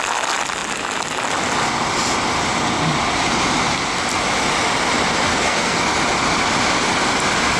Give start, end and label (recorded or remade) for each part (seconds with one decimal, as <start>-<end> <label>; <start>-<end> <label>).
0.0-5.3 recorded; 5.3-5.8 remade; 5.8-7.6 recorded